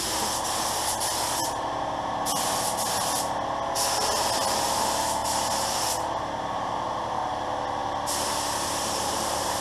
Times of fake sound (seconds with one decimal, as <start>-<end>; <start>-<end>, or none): none